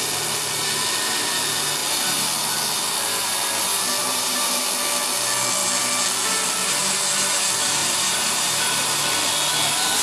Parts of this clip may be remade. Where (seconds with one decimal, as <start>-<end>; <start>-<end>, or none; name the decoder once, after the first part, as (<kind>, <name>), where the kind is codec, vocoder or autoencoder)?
4.0-4.6 (vocoder, BigVGAN v2); 7.8-9.0